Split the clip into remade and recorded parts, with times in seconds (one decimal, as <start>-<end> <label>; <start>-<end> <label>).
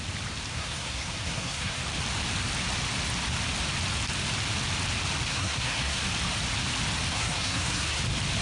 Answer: 0.0-0.5 recorded; 0.5-1.8 remade; 1.8-5.3 recorded; 5.3-6.0 remade; 6.0-7.1 recorded; 7.1-8.0 remade; 8.0-8.4 recorded